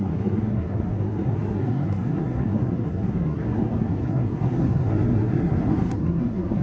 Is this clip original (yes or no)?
no